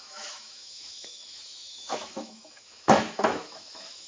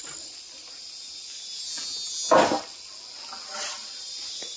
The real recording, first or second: second